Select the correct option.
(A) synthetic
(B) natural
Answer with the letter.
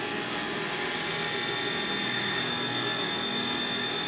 B